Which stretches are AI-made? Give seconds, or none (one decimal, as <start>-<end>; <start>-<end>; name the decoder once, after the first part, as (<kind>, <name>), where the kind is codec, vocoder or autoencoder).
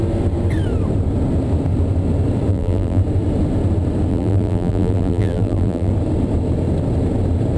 2.5-3.0 (vocoder, BigVGAN v2); 4.1-5.9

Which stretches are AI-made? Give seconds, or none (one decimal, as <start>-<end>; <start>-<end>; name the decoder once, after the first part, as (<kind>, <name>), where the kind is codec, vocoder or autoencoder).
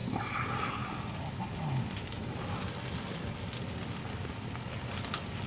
none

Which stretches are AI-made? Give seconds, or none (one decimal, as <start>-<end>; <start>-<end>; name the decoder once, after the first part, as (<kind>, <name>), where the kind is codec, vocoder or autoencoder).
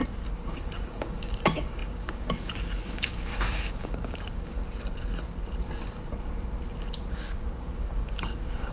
0.5-4.6 (codec, DAC); 7.1-8.7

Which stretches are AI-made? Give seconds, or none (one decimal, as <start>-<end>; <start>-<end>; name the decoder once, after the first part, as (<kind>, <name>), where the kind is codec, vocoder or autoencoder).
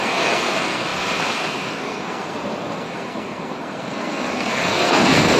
0.0-5.4 (codec, SNAC)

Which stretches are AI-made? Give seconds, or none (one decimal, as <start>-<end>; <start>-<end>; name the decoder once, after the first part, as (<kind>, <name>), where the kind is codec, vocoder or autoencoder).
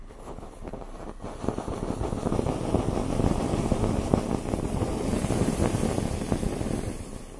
0.0-0.8 (codec, HILCodec)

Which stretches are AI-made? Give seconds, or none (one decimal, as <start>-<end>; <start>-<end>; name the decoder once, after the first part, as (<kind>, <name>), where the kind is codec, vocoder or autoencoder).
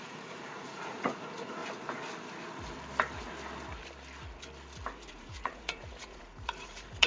0.0-1.6 (vocoder, Vocos); 5.1-7.1